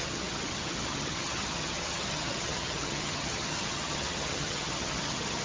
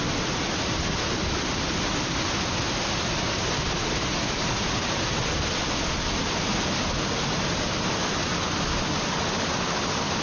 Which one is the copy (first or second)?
first